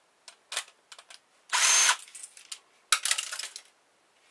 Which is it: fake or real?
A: real